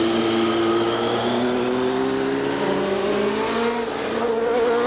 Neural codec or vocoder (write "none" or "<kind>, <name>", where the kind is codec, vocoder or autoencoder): none